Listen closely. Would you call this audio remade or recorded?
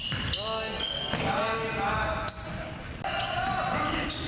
recorded